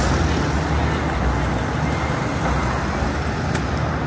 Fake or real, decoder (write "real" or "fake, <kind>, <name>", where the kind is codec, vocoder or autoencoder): real